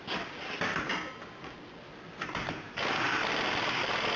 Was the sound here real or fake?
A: real